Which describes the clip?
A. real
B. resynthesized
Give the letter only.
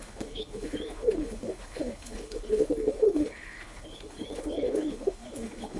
B